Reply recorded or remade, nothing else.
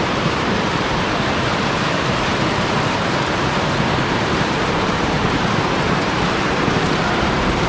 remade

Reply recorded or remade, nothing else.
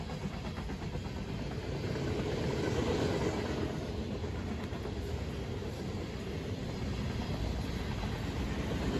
recorded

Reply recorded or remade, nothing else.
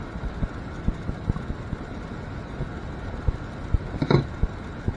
recorded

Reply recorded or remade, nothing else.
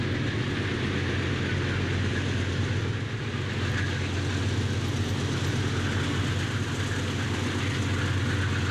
recorded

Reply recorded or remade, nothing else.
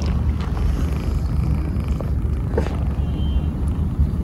recorded